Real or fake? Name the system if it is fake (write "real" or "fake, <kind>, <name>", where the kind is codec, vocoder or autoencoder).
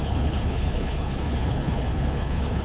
fake, codec, HILCodec